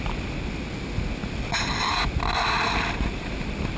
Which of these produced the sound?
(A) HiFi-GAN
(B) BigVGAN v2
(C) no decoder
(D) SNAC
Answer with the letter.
C